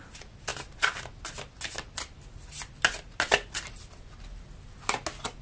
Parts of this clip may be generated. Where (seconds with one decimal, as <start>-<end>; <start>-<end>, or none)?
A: none